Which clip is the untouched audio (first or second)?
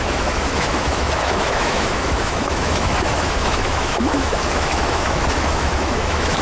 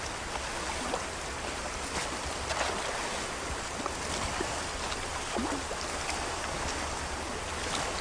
second